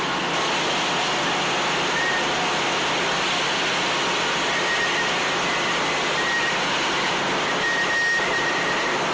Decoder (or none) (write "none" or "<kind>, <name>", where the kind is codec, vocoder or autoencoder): none